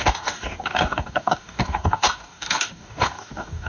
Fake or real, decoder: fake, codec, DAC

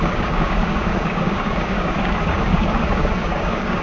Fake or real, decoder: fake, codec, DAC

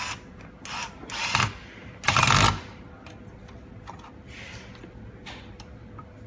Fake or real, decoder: real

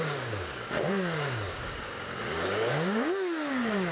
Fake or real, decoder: fake, codec, DAC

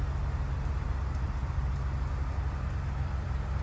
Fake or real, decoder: real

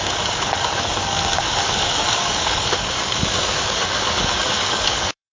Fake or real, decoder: fake, codec, DAC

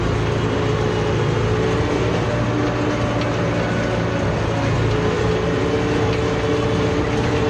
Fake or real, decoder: real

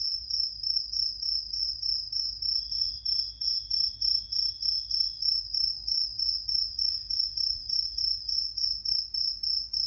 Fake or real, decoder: real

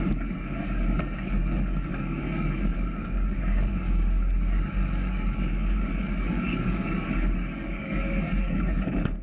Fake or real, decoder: fake, codec, DAC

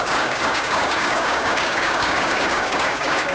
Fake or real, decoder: fake, codec, DAC